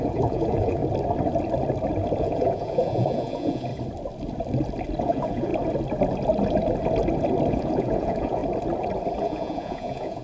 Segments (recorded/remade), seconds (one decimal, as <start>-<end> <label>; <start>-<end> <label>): 0.0-0.8 remade; 0.8-2.2 recorded; 2.2-3.7 remade; 3.7-5.0 recorded; 5.0-5.5 remade; 5.5-7.5 recorded; 7.5-8.4 remade; 8.4-9.2 recorded; 9.2-10.2 remade